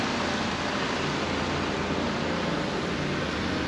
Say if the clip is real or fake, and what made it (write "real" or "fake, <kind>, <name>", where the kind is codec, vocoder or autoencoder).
real